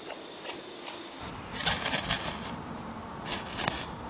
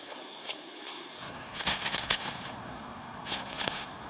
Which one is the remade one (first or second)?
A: second